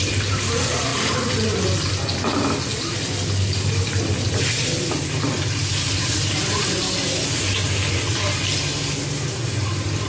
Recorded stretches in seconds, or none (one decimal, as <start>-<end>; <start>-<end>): 0.0-10.1